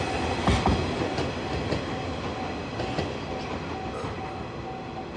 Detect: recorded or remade recorded